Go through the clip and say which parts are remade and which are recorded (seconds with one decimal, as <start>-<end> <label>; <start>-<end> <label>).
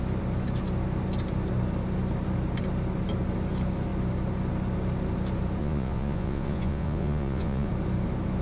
0.0-5.6 recorded; 5.6-7.7 remade; 7.7-8.4 recorded